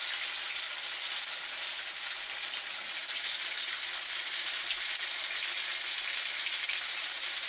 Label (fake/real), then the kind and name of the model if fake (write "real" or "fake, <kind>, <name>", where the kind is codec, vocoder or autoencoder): real